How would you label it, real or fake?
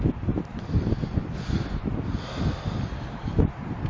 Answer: real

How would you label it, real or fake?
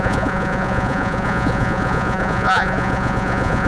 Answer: fake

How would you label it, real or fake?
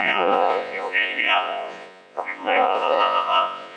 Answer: fake